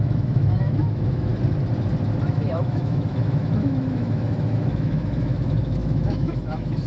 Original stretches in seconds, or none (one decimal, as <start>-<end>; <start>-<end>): 1.3-2.3